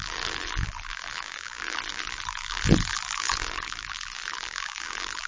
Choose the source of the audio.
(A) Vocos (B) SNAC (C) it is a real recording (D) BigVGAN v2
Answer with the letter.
D